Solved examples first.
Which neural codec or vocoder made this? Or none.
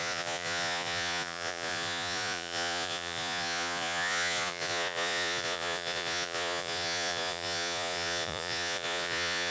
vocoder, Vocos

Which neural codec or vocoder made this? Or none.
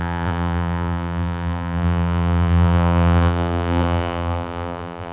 vocoder, BigVGAN v2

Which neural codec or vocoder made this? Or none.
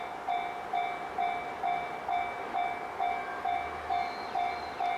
none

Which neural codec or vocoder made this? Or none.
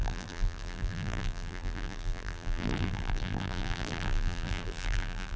vocoder, BigVGAN v2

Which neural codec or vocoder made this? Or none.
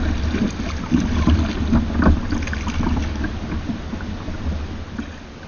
none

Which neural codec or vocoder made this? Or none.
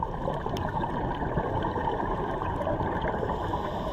vocoder, BigVGAN v2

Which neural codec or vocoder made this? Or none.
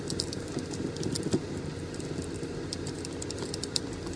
none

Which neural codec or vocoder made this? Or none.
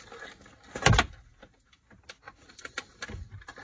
none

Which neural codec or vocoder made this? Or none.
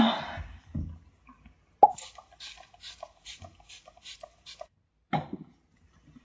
none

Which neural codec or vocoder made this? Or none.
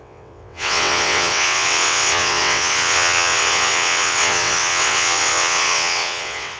vocoder, WaveNeXt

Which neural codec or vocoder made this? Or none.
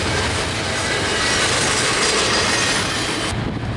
none